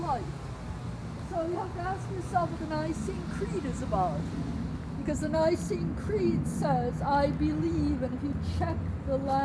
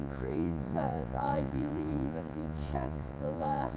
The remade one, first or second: second